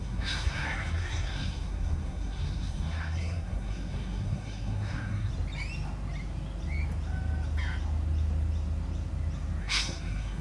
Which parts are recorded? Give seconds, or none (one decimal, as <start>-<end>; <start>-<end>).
5.3-9.6

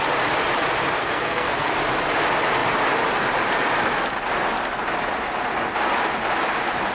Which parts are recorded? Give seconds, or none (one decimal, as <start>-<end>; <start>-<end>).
0.0-1.0; 1.7-6.9